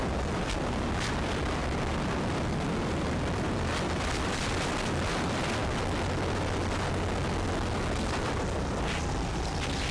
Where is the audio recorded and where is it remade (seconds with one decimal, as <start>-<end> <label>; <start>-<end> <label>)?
0.0-1.6 remade; 1.6-2.8 recorded; 2.8-5.6 remade; 5.6-8.6 recorded; 8.6-9.9 remade